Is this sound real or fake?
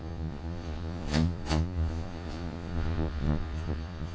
fake